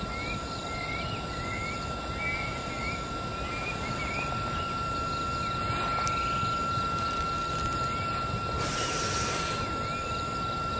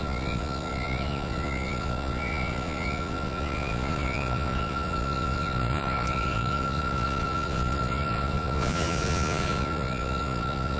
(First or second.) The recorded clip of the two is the first